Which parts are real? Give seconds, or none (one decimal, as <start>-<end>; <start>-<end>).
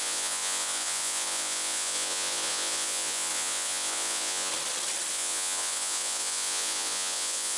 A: 4.5-5.1